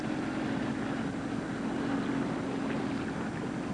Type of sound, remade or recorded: recorded